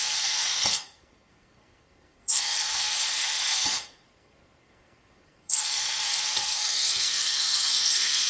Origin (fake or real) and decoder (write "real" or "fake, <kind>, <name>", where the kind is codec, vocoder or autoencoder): fake, codec, SNAC